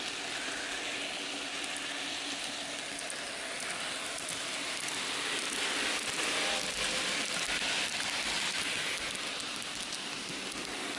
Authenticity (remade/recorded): recorded